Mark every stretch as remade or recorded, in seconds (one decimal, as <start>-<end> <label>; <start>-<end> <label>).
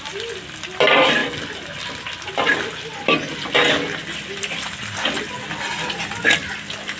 0.0-7.0 recorded